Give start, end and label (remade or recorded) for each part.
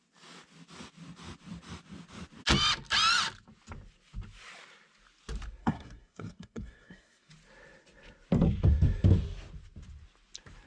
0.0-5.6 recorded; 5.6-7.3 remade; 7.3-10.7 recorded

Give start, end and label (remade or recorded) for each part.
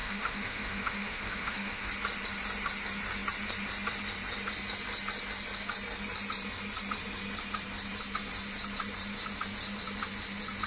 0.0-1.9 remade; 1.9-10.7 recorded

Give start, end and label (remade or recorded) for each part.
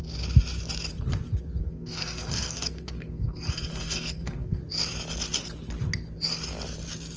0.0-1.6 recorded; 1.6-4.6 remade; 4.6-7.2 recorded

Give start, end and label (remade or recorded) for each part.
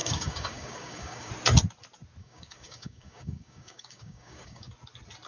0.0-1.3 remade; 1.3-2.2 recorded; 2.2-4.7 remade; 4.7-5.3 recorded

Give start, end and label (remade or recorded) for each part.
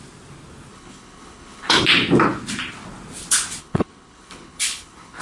0.0-0.7 recorded; 0.7-1.8 remade; 1.8-3.6 recorded; 3.6-5.2 remade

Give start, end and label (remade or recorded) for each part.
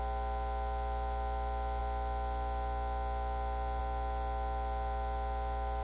0.0-5.8 recorded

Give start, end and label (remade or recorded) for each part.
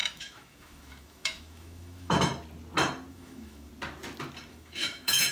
0.0-2.3 remade; 2.3-3.1 recorded; 3.1-3.7 remade; 3.7-4.5 recorded; 4.5-5.3 remade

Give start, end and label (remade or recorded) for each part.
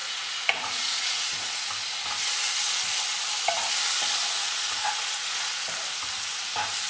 0.0-1.7 remade; 1.7-4.2 recorded; 4.2-5.5 remade; 5.5-6.9 recorded